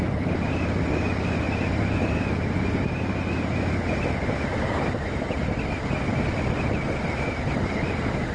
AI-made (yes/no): no